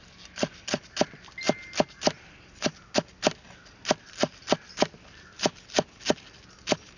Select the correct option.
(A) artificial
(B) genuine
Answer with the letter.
B